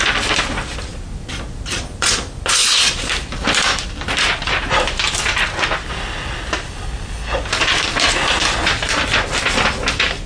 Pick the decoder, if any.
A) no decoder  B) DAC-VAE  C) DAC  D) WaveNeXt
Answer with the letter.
A